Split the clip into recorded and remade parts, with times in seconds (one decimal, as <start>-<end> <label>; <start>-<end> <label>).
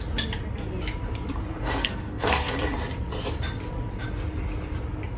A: 0.0-1.8 recorded; 1.8-2.5 remade; 2.5-5.2 recorded